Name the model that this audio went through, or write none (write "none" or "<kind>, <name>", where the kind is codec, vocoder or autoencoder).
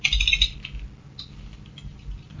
none